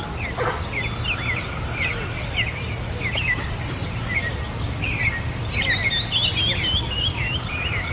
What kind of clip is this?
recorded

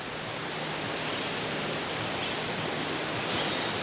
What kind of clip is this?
recorded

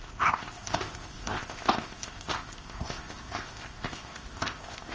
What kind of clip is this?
remade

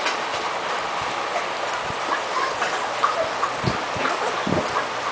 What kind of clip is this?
recorded